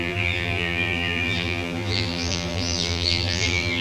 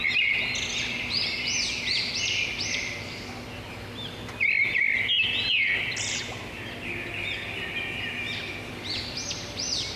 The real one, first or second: second